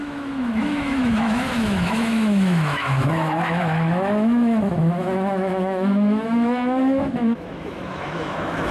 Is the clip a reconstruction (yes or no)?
yes